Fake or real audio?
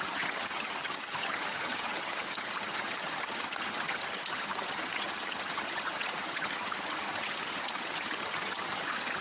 fake